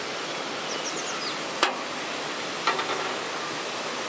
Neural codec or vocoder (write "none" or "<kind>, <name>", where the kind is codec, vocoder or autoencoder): none